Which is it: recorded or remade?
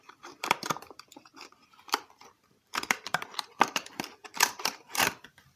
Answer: remade